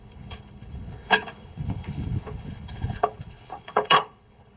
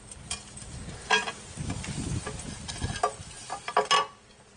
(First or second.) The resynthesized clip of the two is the first